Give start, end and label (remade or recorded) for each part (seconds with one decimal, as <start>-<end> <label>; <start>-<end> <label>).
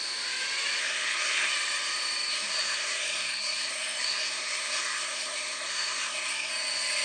0.0-0.8 recorded; 0.8-1.5 remade; 1.5-2.3 recorded; 2.3-6.5 remade; 6.5-7.0 recorded